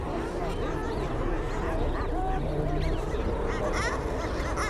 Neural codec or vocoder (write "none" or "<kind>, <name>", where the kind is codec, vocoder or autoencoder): none